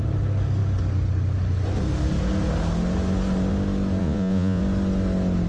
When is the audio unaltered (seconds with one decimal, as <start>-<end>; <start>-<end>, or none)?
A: 0.0-4.0; 4.6-5.5